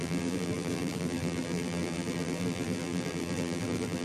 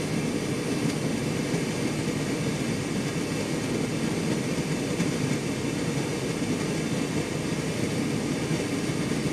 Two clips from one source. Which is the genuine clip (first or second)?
second